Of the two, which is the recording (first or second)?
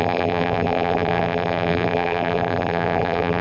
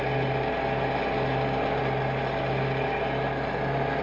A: second